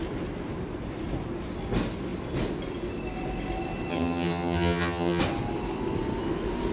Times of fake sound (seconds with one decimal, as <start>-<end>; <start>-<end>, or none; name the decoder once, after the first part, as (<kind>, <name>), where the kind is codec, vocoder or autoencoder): 3.9-5.2 (vocoder, HiFi-GAN)